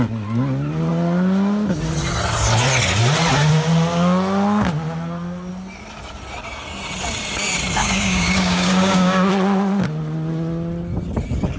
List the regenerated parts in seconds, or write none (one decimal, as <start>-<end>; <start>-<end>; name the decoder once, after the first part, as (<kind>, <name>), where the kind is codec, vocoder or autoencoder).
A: 7.8-9.3 (codec, DAC)